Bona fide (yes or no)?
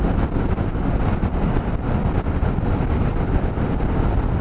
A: yes